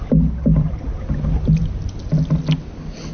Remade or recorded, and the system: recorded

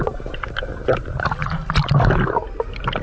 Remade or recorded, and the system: recorded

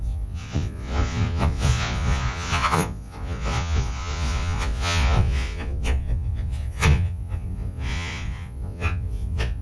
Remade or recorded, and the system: remade, vocoder, Vocos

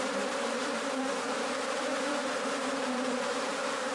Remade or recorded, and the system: remade, vocoder, BigVGAN v2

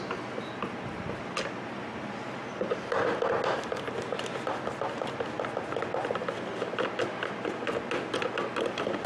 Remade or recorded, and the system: recorded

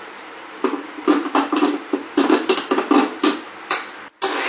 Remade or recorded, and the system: recorded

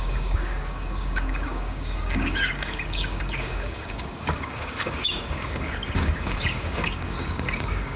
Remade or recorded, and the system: remade, codec, DAC